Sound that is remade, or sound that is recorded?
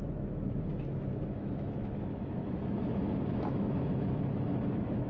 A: remade